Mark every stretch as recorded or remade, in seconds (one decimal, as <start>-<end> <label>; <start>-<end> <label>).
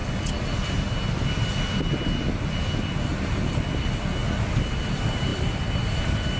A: 0.0-3.8 recorded; 3.8-4.2 remade; 4.2-4.7 recorded; 4.7-6.4 remade